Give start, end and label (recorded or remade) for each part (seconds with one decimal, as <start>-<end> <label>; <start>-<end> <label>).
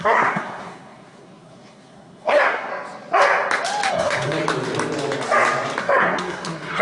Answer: 0.0-2.7 remade; 2.7-3.9 recorded; 3.9-4.4 remade; 4.4-5.8 recorded; 5.8-6.8 remade